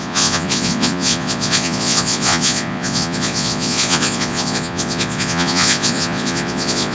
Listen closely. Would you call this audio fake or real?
fake